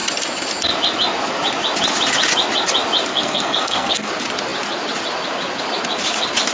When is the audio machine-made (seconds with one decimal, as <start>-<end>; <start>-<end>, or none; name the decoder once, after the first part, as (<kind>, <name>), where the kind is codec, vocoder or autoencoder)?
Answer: 3.1-4.1 (codec, SNAC)